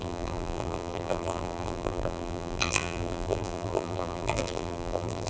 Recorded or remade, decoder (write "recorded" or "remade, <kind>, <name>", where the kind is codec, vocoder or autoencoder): remade, vocoder, BigVGAN v2